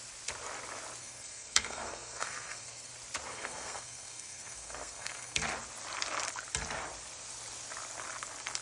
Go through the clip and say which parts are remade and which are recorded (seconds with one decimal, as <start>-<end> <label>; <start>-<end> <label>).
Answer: 0.0-1.0 recorded; 1.0-2.9 remade; 2.9-3.3 recorded; 3.3-5.4 remade; 5.4-8.6 recorded